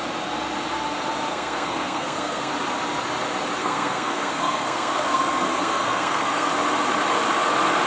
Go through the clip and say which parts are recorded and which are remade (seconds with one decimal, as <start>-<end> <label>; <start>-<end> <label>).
0.0-1.3 recorded; 1.3-2.5 remade; 2.5-3.6 recorded; 3.6-6.5 remade; 6.5-7.9 recorded